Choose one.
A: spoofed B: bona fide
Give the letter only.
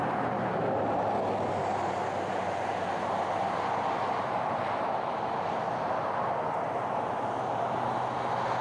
B